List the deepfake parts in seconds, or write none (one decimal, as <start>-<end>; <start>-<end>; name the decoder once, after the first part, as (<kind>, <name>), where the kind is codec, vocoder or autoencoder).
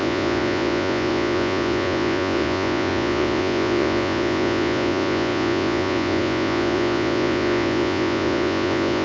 0.0-9.0 (vocoder, Vocos)